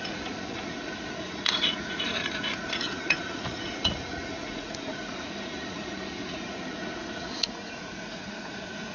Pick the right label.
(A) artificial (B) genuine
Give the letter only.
A